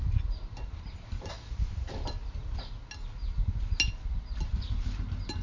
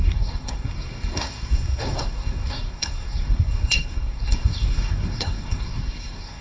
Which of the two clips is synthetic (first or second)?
second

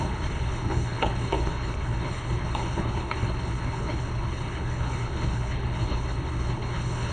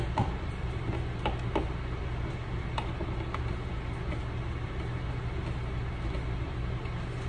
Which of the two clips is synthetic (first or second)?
first